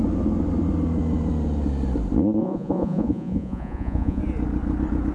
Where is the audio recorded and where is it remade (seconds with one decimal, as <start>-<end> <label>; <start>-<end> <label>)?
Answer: 0.0-2.4 recorded; 2.4-4.2 remade; 4.2-5.1 recorded

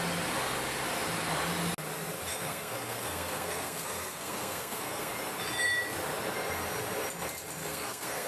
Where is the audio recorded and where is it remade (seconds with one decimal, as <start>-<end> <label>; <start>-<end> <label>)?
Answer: 0.0-2.3 recorded; 2.3-5.1 remade; 5.1-7.6 recorded; 7.6-8.3 remade

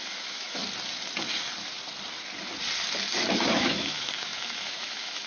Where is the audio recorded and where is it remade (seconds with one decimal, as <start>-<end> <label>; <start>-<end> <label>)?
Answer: 0.0-0.6 remade; 0.6-3.3 recorded; 3.3-5.3 remade